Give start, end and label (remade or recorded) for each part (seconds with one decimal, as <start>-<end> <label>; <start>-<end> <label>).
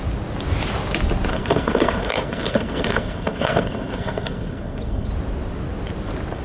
0.0-1.3 recorded; 1.3-5.1 remade; 5.1-6.4 recorded